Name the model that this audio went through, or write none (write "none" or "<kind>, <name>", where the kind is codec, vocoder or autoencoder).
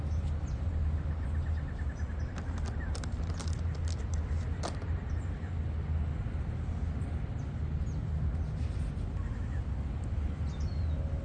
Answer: none